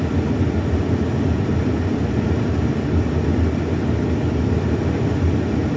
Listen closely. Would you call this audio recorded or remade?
recorded